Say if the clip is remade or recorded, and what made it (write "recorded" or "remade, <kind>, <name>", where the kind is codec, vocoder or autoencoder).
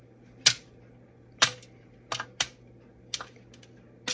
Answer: recorded